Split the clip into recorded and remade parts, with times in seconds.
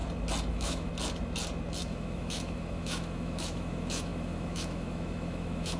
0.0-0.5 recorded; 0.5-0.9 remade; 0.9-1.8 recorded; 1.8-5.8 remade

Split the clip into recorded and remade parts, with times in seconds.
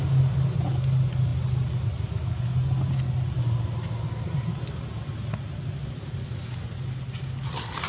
0.0-7.9 recorded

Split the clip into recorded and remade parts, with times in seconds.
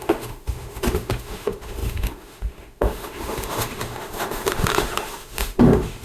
0.0-6.0 remade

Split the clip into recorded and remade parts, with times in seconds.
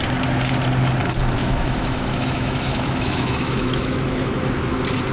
0.0-1.4 recorded; 1.4-4.5 remade; 4.5-5.1 recorded